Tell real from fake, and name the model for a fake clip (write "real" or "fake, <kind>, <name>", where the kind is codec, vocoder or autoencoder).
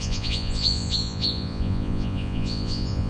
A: fake, vocoder, Vocos